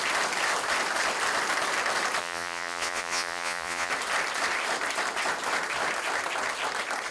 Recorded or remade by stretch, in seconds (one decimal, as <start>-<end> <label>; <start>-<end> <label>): 0.0-2.2 recorded; 2.2-3.9 remade; 3.9-7.1 recorded